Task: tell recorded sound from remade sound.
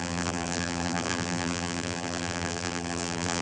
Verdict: remade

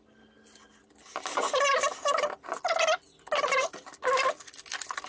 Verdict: recorded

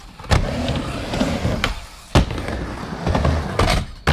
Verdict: recorded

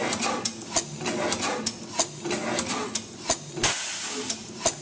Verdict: recorded